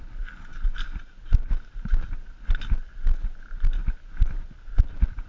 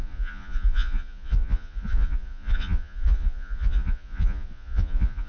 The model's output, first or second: second